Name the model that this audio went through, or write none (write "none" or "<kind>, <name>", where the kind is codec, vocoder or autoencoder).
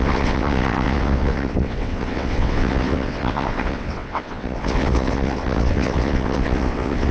vocoder, WaveNeXt